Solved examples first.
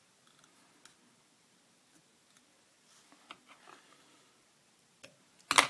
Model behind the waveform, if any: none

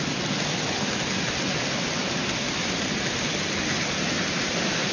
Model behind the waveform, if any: none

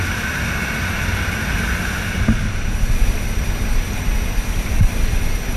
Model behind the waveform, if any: none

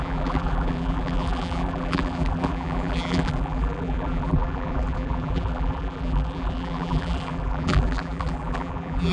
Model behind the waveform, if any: vocoder, BigVGAN v2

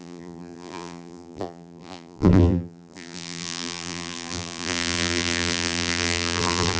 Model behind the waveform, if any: vocoder, BigVGAN v2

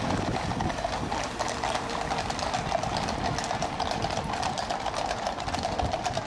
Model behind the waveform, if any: none